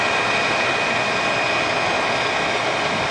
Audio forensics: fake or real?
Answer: real